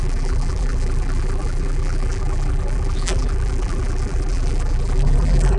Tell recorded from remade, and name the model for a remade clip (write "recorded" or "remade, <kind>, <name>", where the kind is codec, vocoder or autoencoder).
remade, vocoder, BigVGAN v2